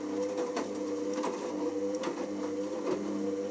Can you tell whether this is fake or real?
real